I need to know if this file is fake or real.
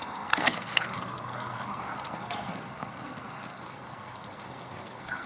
fake